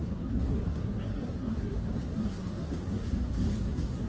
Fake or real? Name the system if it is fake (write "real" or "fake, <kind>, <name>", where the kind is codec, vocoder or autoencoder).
fake, codec, SNAC